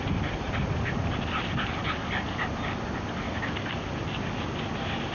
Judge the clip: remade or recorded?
recorded